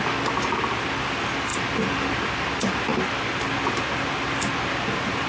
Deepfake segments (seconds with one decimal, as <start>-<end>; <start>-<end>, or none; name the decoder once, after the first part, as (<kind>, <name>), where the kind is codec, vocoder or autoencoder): none